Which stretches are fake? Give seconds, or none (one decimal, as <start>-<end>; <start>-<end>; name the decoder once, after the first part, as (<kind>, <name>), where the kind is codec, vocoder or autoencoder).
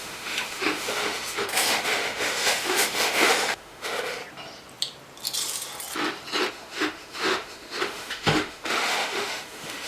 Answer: 0.0-4.2 (autoencoder, DAC-VAE); 6.5-9.9